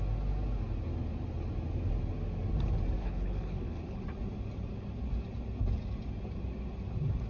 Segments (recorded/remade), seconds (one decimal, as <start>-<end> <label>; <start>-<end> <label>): 0.0-3.0 recorded; 3.0-4.0 remade; 4.0-7.3 recorded

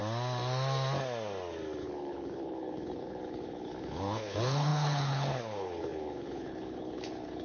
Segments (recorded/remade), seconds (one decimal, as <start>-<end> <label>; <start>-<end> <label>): 0.0-1.8 recorded; 1.8-7.4 remade

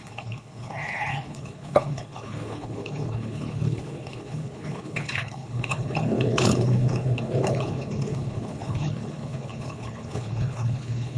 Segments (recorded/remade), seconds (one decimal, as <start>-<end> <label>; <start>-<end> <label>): 0.0-11.2 remade

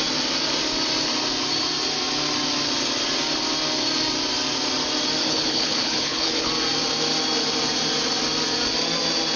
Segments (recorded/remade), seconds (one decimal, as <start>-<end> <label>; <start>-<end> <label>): 0.0-5.2 recorded; 5.2-6.5 remade; 6.5-9.4 recorded